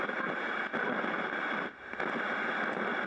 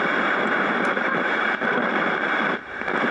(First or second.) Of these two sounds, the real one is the first